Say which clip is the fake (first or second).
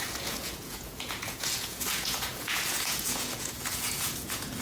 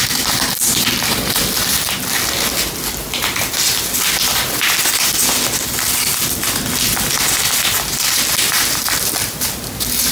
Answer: first